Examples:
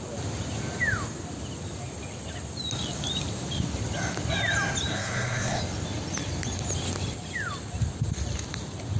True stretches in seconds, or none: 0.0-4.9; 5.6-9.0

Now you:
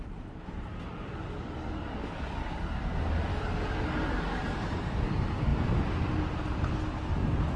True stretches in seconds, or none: 0.0-0.7; 2.8-3.3; 4.4-7.6

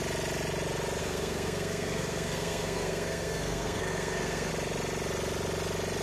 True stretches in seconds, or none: 0.0-1.0; 4.5-6.0